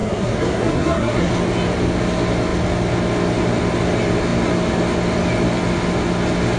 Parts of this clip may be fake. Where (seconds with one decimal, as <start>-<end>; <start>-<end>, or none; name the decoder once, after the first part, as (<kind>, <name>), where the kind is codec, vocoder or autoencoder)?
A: 0.0-1.3 (codec, SNAC)